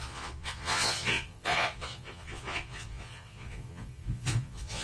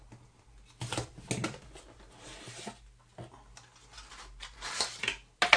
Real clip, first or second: second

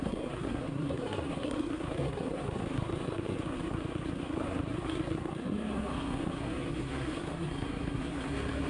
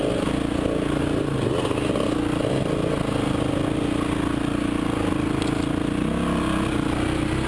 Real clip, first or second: second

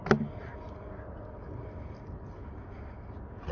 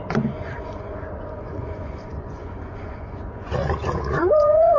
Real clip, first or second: first